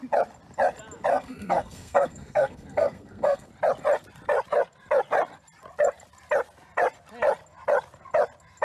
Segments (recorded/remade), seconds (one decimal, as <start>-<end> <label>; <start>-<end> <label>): 0.0-1.1 recorded; 1.1-3.5 remade; 3.5-8.6 recorded